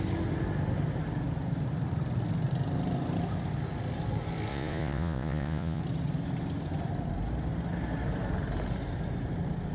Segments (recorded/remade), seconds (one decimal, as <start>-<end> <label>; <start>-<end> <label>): 0.0-4.5 recorded; 4.5-5.8 remade; 5.8-9.7 recorded